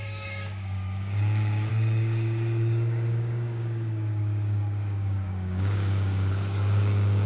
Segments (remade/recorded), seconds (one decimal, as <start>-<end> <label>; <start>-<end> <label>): 0.0-7.3 remade